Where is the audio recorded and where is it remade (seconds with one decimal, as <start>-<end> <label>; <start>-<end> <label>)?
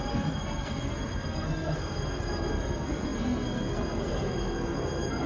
0.0-5.3 remade